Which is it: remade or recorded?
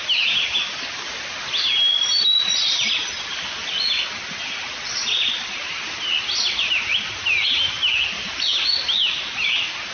recorded